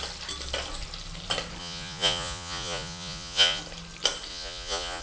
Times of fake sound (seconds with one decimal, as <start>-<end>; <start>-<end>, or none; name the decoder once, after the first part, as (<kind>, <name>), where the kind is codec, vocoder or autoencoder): 1.6-3.6 (vocoder, Vocos); 4.3-5.0